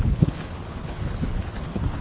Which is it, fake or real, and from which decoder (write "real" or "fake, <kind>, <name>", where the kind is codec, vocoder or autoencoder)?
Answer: fake, codec, HILCodec